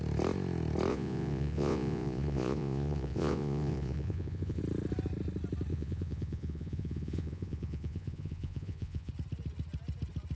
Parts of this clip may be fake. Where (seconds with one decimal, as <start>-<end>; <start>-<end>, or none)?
0.9-4.6; 5.7-9.1